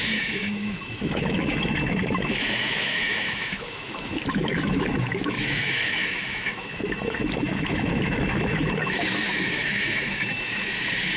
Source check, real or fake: fake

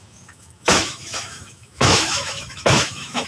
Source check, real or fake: fake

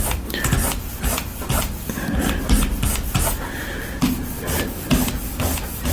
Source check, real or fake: real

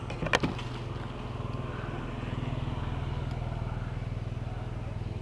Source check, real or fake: real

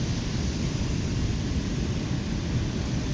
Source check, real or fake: real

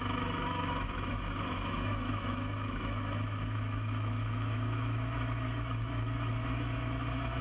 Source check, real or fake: fake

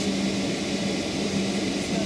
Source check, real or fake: real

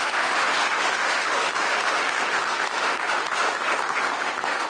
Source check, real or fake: fake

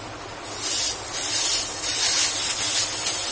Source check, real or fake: real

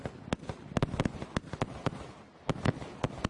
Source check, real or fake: real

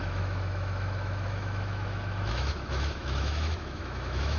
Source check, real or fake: fake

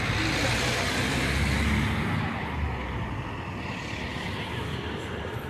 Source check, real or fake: real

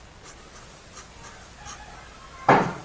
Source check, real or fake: real